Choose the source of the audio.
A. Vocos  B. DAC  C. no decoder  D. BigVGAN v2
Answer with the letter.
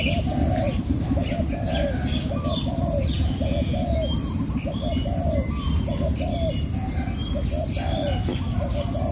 C